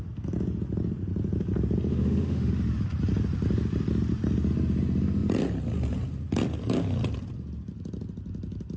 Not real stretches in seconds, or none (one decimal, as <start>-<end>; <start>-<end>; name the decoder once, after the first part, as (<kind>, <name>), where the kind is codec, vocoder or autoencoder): 1.9-2.5 (autoencoder, DAC-VAE)